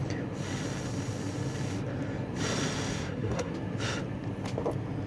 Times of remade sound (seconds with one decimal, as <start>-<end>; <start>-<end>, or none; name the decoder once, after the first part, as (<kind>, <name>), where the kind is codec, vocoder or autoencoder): 2.9-3.5 (codec, SNAC)